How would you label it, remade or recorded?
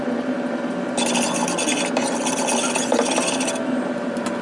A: recorded